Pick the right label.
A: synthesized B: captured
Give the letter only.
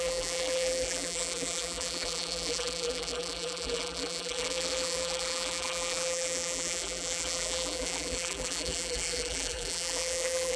A